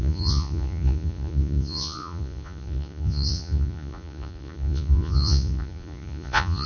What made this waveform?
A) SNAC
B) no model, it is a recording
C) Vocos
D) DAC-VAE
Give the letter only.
C